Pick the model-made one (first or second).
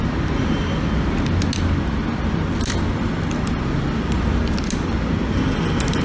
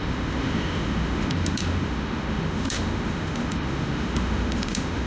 second